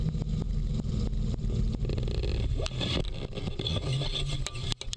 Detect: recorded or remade recorded